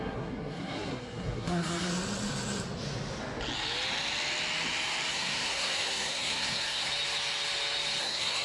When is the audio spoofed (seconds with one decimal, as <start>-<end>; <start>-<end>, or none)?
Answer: 0.0-1.9; 5.1-6.9; 8.0-8.4